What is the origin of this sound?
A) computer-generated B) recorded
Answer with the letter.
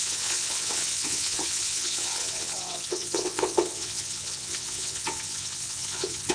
A